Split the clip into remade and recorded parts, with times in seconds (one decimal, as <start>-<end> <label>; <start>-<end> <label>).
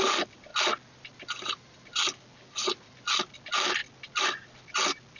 0.0-5.2 recorded